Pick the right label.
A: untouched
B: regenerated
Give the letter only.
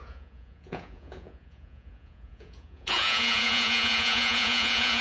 B